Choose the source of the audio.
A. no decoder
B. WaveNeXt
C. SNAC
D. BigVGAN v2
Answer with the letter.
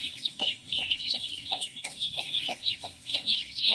C